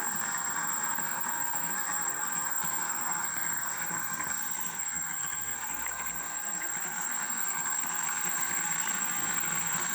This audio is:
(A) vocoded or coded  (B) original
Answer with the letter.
A